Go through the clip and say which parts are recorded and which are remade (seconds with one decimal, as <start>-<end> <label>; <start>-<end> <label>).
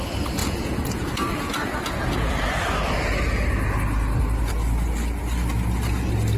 0.0-0.4 recorded; 0.4-2.3 remade; 2.3-6.4 recorded